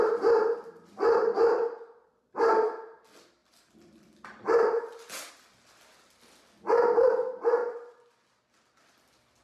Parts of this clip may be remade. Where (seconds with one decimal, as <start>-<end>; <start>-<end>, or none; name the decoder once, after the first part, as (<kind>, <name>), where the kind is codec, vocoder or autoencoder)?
3.4-5.3 (vocoder, BigVGAN v2)